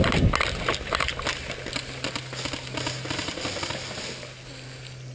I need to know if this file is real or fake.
real